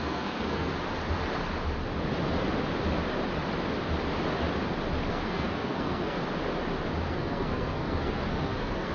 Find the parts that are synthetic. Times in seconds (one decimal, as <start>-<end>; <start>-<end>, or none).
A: 0.0-0.7; 5.1-6.2; 7.1-8.9